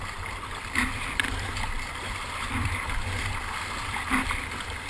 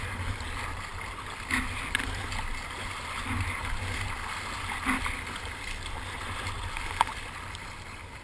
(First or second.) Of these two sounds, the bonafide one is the second